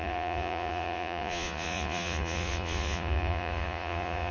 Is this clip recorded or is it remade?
remade